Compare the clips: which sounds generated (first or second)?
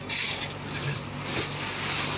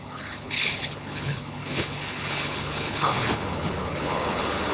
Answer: second